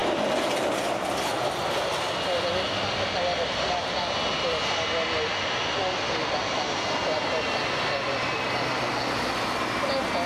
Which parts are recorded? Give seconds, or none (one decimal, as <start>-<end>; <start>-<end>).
0.0-10.3